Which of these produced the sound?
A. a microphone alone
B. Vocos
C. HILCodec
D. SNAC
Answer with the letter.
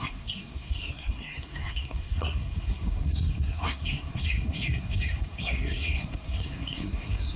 D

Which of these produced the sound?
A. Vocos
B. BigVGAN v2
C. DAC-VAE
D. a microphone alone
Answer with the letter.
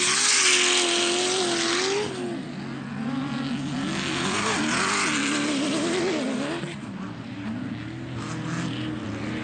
D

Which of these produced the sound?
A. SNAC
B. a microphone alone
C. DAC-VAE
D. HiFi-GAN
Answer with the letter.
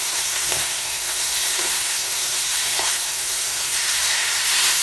A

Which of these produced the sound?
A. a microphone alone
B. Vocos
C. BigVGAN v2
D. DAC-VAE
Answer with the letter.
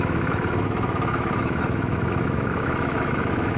D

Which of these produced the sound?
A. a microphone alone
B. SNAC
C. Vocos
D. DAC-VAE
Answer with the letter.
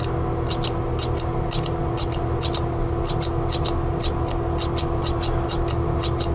A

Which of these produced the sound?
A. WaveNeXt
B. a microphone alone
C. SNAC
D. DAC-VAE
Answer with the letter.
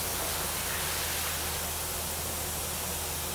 B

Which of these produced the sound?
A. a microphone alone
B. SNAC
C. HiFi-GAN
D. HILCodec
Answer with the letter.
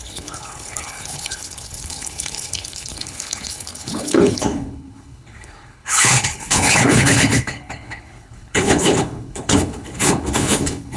D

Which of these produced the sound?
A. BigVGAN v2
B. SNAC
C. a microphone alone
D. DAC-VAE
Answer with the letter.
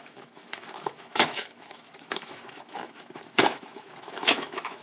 D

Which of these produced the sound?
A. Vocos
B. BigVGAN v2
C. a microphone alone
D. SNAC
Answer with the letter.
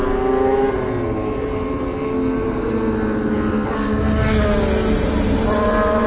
C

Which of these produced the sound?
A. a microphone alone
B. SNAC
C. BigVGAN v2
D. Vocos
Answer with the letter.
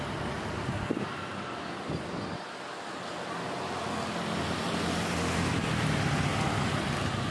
A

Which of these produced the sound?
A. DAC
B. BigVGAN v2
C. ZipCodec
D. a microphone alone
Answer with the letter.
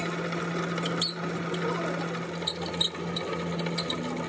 D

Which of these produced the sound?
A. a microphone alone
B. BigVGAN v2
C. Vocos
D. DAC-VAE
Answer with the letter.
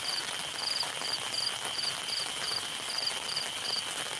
A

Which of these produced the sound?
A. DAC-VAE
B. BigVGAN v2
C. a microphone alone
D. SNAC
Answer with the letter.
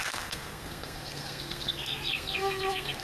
D